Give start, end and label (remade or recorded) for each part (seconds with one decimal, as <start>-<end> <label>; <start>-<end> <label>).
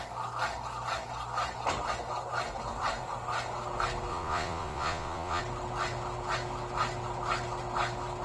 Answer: 0.0-4.1 recorded; 4.1-5.4 remade; 5.4-8.2 recorded